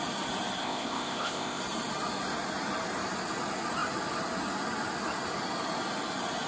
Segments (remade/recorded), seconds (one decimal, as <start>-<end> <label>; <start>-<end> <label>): 0.0-0.6 recorded; 0.6-1.6 remade; 1.6-6.5 recorded